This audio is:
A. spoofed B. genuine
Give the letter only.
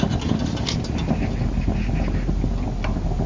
B